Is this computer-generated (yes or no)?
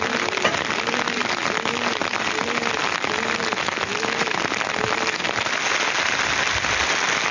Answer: no